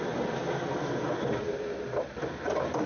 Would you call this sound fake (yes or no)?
no